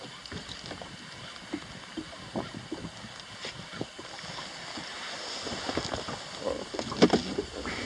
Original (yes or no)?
yes